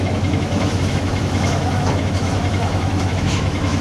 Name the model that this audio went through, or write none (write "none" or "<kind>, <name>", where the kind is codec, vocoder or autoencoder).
autoencoder, DAC-VAE